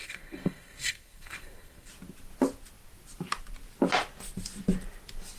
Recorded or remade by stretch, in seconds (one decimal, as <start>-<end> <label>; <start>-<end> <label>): 0.0-1.9 remade; 1.9-5.4 recorded